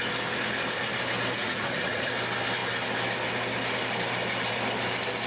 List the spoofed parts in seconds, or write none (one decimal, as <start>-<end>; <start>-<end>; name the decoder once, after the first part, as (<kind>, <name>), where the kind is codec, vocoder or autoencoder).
1.4-2.1 (vocoder, Vocos)